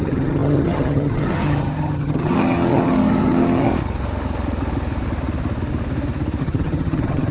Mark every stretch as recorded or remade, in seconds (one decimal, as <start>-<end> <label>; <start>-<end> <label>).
0.0-3.7 remade; 3.7-6.4 recorded; 6.4-7.3 remade